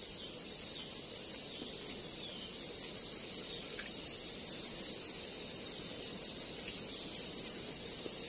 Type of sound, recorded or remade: recorded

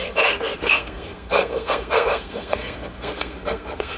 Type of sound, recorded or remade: remade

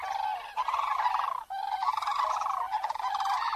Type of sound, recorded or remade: remade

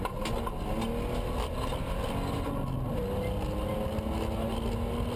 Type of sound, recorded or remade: recorded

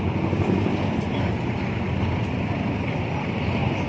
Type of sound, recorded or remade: recorded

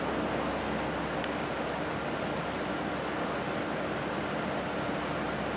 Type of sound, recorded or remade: recorded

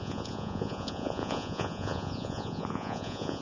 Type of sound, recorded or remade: remade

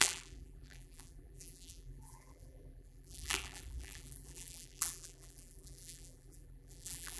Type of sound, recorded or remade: remade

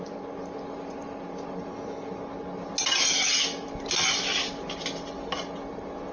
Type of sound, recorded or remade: recorded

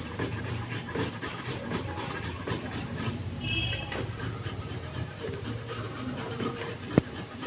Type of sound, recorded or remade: remade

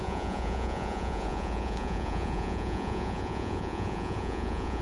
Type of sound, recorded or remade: remade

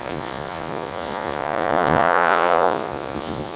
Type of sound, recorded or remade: remade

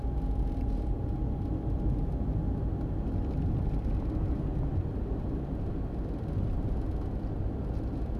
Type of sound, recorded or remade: recorded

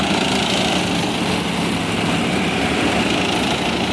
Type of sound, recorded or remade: remade